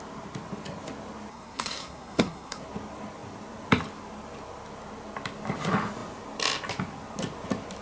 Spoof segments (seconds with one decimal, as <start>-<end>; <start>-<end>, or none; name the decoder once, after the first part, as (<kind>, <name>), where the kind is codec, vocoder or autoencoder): 1.3-2.6 (codec, SNAC)